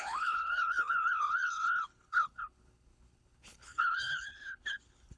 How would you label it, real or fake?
fake